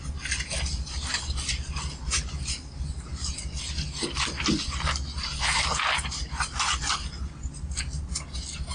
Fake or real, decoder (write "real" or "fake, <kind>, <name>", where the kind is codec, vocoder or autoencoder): real